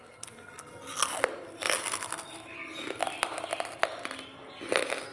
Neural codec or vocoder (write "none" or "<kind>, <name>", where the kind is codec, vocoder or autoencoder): none